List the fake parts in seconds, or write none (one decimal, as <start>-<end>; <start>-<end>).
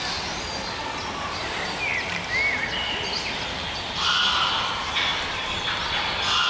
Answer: none